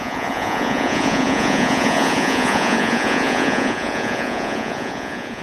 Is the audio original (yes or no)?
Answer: no